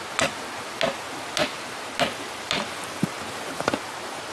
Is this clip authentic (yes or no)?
yes